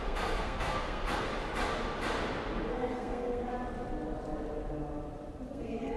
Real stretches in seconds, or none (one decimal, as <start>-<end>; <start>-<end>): 1.3-2.7; 3.4-5.5